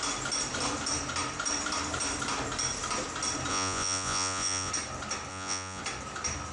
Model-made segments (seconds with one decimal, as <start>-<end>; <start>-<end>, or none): 3.5-4.7; 5.3-5.8